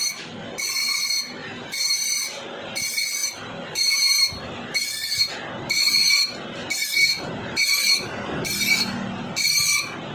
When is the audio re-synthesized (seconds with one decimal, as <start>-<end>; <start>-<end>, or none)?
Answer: 1.4-2.1; 3.2-5.3; 6.8-7.8